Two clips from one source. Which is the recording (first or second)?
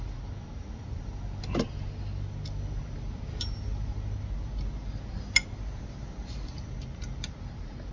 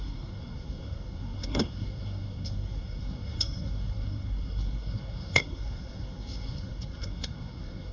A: first